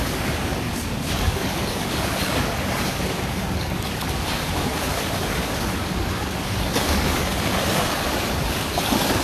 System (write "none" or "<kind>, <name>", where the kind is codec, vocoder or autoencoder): codec, DAC